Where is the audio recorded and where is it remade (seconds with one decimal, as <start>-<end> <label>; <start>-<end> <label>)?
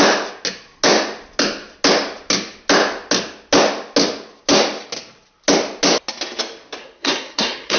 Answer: 0.0-6.8 recorded; 6.8-7.8 remade